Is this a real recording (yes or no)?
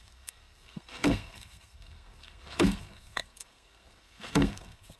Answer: no